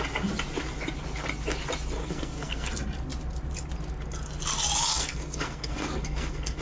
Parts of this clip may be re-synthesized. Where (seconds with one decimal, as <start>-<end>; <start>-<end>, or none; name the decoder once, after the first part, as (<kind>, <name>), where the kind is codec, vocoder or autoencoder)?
2.0-2.7 (codec, SNAC); 4.9-6.6